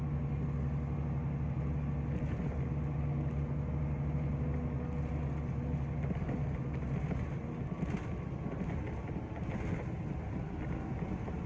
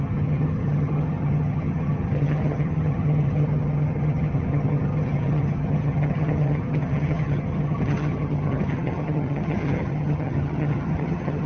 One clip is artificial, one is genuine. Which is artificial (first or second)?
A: second